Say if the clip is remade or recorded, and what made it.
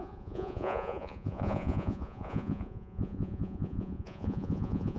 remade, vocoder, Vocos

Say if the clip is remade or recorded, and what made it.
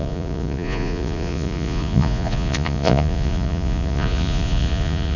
remade, vocoder, Vocos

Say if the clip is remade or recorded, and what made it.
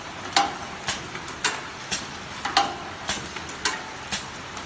recorded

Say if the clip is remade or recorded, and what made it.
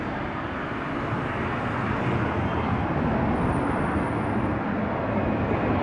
recorded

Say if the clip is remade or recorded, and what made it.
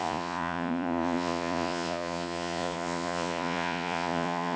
remade, vocoder, Vocos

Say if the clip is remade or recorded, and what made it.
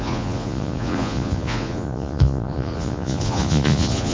remade, vocoder, Vocos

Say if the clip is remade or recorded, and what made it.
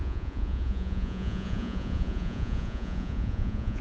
remade, vocoder, Vocos